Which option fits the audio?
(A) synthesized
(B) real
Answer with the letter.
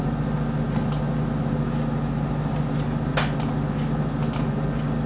B